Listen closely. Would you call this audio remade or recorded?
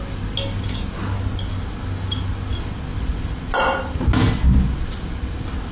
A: recorded